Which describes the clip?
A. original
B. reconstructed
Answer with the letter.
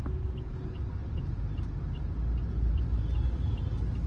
A